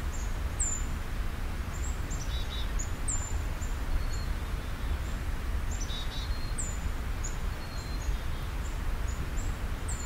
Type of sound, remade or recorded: recorded